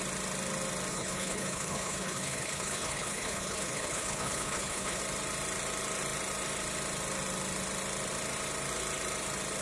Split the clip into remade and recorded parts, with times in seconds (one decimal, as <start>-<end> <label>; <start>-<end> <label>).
0.0-0.9 recorded; 0.9-5.0 remade; 5.0-9.6 recorded